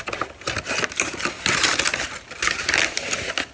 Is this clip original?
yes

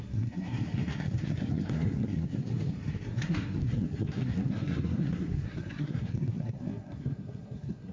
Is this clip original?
no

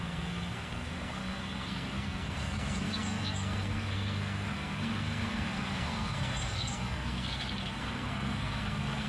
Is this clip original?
no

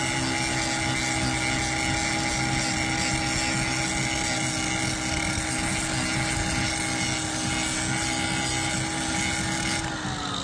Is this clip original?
yes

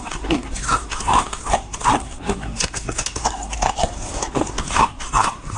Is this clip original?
no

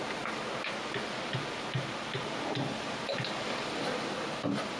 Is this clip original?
yes